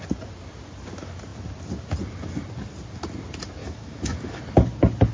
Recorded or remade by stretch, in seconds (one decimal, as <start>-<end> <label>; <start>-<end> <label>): 0.0-3.6 recorded; 3.6-4.4 remade; 4.4-5.1 recorded